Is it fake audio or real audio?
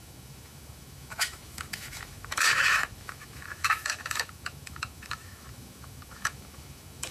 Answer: fake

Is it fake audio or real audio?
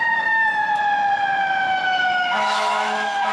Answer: fake